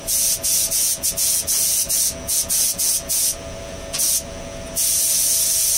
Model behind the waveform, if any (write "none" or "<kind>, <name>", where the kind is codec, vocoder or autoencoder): vocoder, Vocos